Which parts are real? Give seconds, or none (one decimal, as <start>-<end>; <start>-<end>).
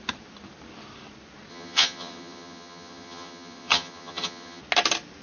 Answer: 0.0-1.5; 4.6-5.2